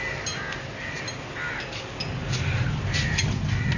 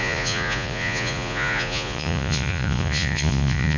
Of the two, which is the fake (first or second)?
second